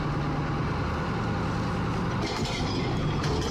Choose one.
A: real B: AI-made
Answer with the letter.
A